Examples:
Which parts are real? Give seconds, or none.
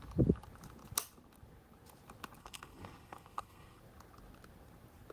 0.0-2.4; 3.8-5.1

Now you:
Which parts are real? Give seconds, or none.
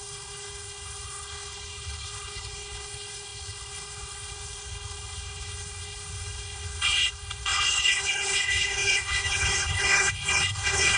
none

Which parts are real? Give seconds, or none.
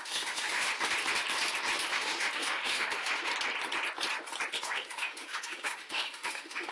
0.7-1.9; 3.3-4.6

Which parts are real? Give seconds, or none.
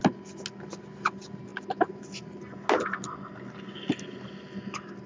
0.0-5.1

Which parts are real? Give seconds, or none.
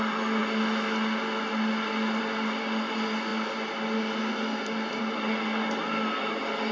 0.0-6.7